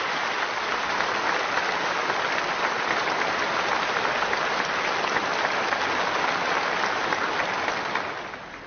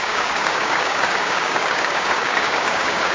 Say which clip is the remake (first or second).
second